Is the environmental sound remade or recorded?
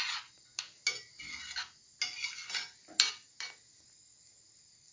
recorded